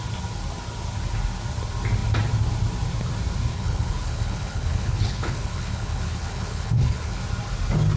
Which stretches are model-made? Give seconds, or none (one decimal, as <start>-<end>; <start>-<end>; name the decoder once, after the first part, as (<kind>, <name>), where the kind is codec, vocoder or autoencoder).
3.5-7.2 (codec, HILCodec)